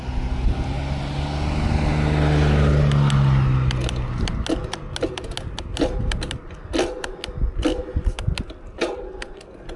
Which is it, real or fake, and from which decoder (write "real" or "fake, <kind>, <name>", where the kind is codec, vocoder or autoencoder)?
real